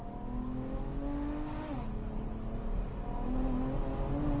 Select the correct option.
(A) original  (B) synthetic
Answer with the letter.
A